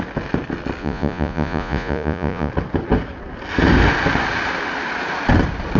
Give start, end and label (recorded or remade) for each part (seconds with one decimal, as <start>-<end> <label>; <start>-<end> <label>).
0.0-0.8 recorded; 0.8-2.5 remade; 2.5-5.8 recorded